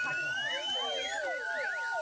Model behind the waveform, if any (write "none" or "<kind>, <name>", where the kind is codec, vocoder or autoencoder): none